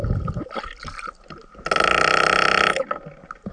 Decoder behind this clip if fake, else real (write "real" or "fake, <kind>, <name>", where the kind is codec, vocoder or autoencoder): real